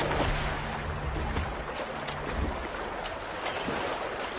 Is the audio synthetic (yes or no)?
no